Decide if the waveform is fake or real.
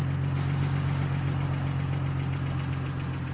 real